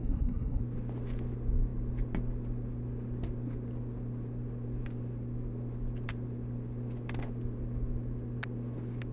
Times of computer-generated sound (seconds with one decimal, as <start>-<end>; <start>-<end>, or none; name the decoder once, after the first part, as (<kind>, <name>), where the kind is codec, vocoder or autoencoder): 0.0-0.6 (codec, SNAC)